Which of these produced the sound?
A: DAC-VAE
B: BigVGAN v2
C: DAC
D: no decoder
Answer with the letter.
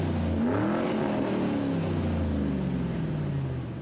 D